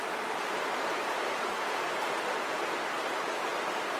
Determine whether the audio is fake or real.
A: real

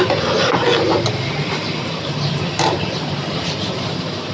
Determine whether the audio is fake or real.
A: real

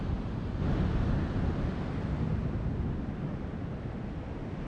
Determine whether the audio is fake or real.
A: real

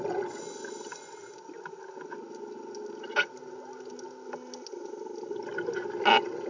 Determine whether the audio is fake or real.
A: real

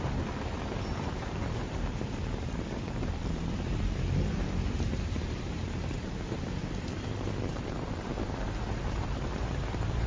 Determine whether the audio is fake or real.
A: fake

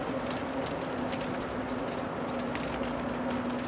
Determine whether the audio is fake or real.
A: real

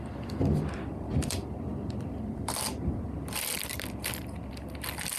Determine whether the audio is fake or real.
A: fake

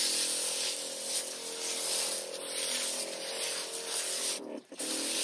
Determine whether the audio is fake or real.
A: real